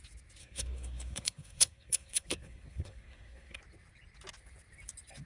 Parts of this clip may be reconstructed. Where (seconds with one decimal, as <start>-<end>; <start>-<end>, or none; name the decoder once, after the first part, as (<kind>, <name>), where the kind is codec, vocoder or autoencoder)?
0.4-3.6 (codec, SNAC)